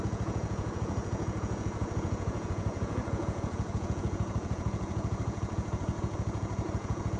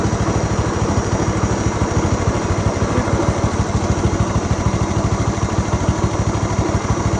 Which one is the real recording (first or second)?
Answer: second